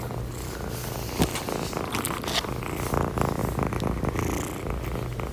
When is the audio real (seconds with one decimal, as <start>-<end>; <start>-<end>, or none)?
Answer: 0.0-5.3